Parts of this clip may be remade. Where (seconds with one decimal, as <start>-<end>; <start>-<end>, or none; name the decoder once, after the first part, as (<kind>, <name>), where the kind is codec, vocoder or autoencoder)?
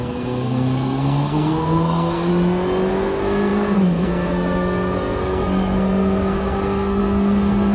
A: 0.0-2.3 (codec, SNAC); 2.9-7.7